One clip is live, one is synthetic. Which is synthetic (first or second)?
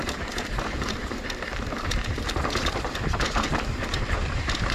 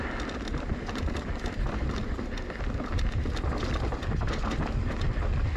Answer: first